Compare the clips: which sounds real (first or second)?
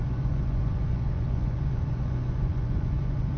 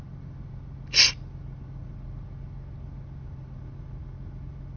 second